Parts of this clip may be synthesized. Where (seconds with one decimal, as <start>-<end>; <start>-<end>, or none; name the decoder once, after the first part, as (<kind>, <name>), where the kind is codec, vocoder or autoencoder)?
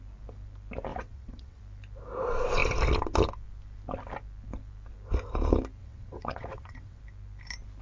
0.9-1.6 (vocoder, WaveNeXt); 5.8-7.0